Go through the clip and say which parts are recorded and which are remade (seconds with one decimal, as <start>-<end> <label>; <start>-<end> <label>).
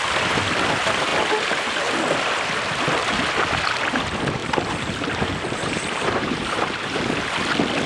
0.0-4.4 recorded; 4.4-7.1 remade; 7.1-7.9 recorded